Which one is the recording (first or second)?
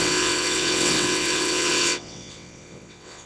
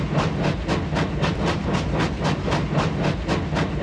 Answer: second